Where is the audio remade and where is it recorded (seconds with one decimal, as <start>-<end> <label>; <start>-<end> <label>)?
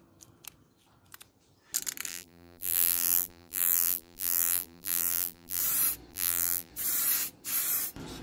0.0-2.1 recorded; 2.1-5.6 remade; 5.6-6.1 recorded; 6.1-6.7 remade; 6.7-8.2 recorded